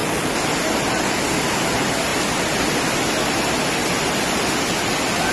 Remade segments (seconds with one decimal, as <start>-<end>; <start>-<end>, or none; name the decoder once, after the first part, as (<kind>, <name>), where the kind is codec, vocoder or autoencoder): none